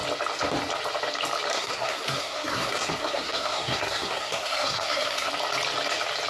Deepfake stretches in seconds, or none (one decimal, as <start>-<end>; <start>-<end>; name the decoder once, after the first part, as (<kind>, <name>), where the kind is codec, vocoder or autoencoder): 1.5-5.3 (codec, SNAC)